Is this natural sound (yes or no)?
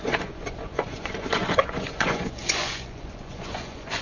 no